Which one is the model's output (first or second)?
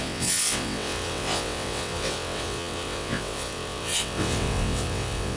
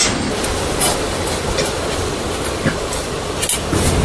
first